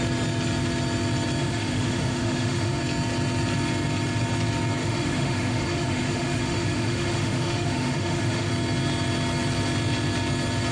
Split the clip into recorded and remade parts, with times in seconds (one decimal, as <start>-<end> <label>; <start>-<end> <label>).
0.0-1.4 recorded; 1.4-2.8 remade; 2.8-4.8 recorded; 4.8-8.5 remade; 8.5-10.7 recorded